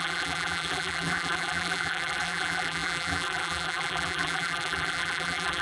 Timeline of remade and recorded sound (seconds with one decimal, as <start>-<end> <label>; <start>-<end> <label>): 0.0-5.6 remade